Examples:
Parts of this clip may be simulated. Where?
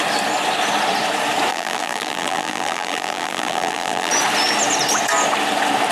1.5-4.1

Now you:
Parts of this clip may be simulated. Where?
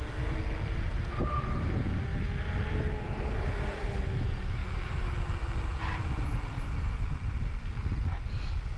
5.7-7.7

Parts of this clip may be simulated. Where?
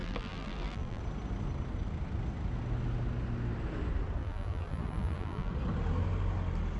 0.0-1.0; 4.2-5.5